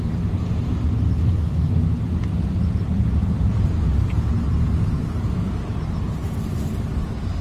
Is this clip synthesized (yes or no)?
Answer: yes